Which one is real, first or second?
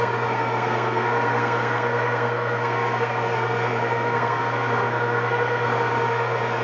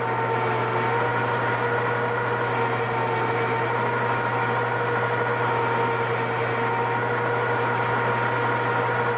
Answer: second